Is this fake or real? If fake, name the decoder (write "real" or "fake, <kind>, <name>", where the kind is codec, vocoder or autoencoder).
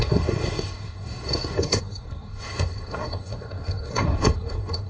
fake, codec, SNAC